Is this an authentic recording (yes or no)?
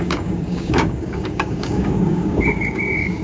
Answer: no